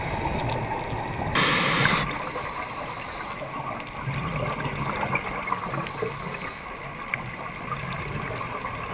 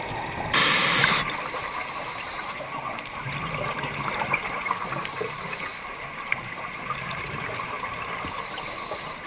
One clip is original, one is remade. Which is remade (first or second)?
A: second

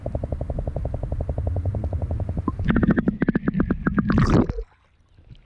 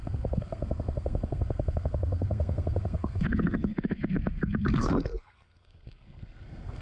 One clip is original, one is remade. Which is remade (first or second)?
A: second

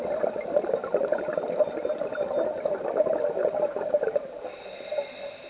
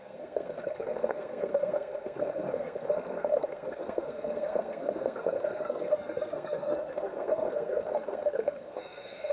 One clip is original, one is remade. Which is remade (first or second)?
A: second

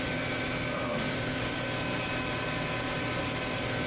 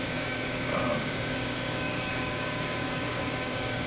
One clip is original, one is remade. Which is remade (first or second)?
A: second